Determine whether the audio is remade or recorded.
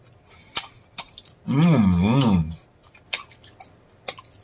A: recorded